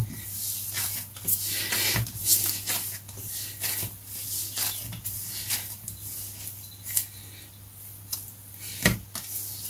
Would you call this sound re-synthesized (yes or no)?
no